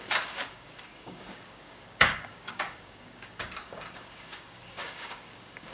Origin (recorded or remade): remade